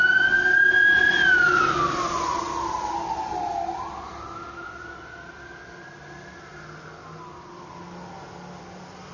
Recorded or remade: recorded